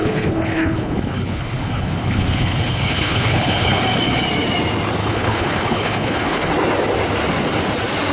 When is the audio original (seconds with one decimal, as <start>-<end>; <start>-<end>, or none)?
3.8-5.0; 6.5-8.1